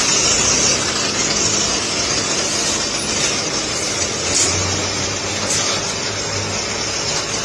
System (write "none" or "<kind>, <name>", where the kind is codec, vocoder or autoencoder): none